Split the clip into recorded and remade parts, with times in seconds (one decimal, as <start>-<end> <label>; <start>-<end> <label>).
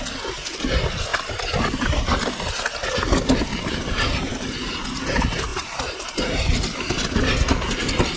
0.0-3.5 recorded; 3.5-4.3 remade; 4.3-5.5 recorded; 5.5-6.6 remade; 6.6-8.2 recorded